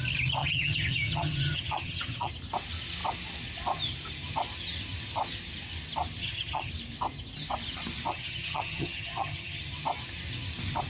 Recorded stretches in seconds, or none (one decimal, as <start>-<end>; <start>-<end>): 0.0-0.4; 2.3-6.2; 6.7-8.1; 9.6-10.9